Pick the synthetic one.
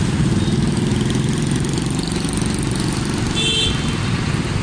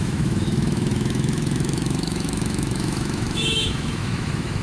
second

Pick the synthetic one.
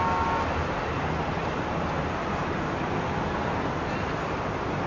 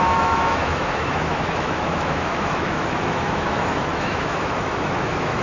second